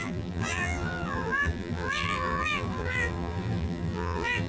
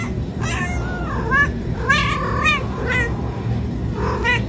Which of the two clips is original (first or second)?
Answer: second